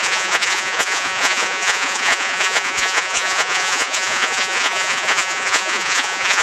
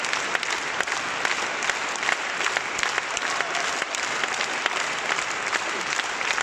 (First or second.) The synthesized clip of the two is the first